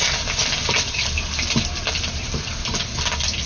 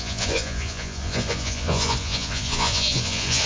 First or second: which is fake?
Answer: second